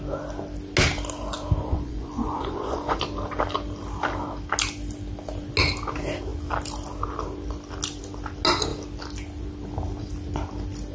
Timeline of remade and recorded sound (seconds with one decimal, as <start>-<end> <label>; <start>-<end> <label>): 0.0-1.6 recorded; 1.6-3.0 remade; 3.0-10.9 recorded